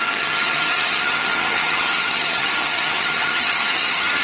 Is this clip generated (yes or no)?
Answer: yes